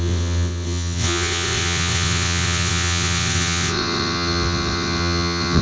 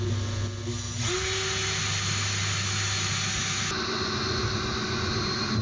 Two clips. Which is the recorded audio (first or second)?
second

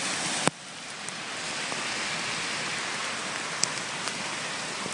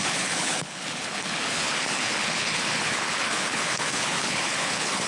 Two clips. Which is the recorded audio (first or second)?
first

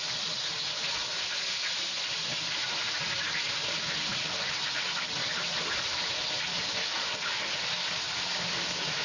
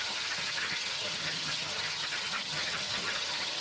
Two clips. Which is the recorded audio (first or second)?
first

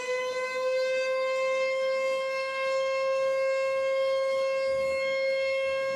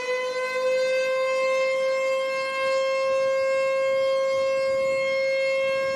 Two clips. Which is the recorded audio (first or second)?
second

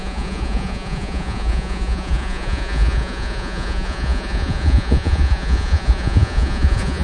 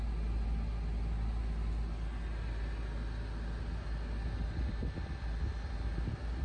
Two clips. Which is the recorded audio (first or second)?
second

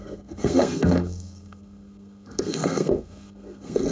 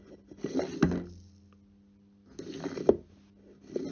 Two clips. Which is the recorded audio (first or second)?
second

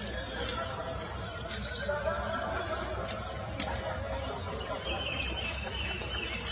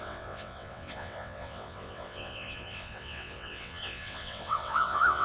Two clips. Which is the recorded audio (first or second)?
first